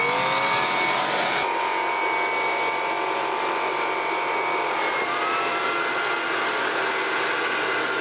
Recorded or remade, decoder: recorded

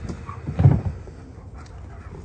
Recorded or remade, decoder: remade, vocoder, BigVGAN v2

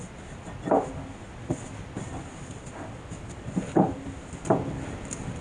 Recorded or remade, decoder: recorded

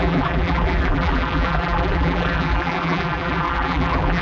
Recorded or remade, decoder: remade, vocoder, BigVGAN v2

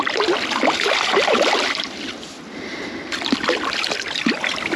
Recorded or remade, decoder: remade, vocoder, BigVGAN v2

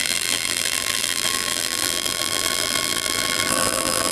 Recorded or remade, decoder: remade, vocoder, BigVGAN v2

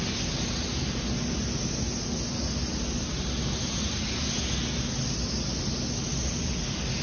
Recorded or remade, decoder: recorded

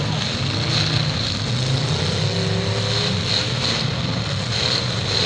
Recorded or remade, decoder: recorded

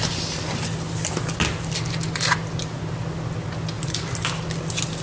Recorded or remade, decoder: recorded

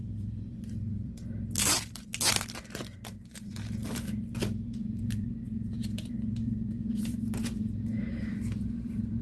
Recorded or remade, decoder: remade, vocoder, BigVGAN v2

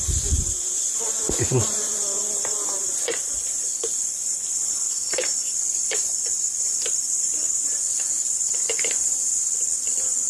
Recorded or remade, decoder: remade, vocoder, BigVGAN v2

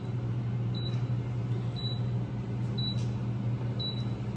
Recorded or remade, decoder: recorded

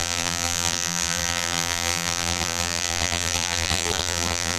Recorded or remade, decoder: remade, vocoder, BigVGAN v2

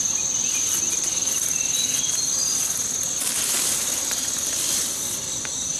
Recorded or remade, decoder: recorded